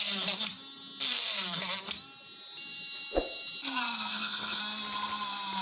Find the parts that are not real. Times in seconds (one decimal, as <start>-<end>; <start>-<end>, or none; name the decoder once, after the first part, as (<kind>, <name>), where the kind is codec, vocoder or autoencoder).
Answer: 4.1-4.6 (codec, HILCodec)